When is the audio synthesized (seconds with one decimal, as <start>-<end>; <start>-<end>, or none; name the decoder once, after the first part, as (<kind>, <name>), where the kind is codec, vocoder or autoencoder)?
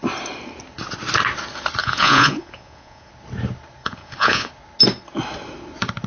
1.8-3.1 (vocoder, Vocos); 3.8-4.5